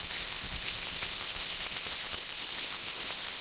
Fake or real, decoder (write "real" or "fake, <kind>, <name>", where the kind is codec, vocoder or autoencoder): fake, codec, ZipCodec